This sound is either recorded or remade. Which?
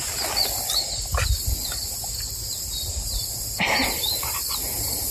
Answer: recorded